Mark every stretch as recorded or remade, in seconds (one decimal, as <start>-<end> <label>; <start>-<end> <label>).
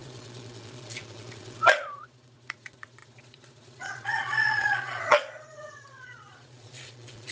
0.0-7.3 remade